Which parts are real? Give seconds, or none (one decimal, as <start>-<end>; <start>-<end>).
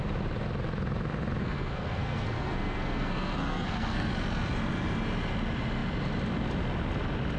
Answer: 0.0-1.4; 4.1-7.4